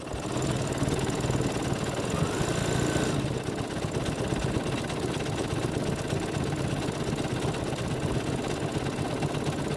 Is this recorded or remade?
recorded